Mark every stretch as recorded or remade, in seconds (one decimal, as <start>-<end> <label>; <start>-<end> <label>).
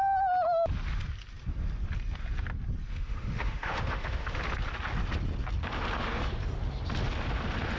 0.0-2.9 recorded; 2.9-4.4 remade; 4.4-7.8 recorded